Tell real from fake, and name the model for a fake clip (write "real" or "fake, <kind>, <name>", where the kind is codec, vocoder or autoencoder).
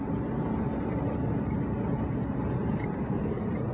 fake, vocoder, BigVGAN v2